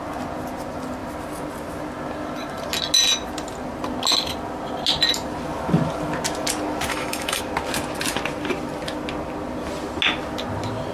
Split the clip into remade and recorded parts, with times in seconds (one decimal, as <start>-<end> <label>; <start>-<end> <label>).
0.0-6.9 recorded; 6.9-7.4 remade; 7.4-10.9 recorded